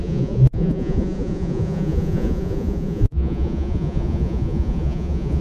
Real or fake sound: fake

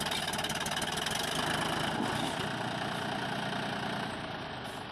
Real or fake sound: real